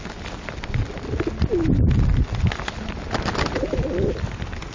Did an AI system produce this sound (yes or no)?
no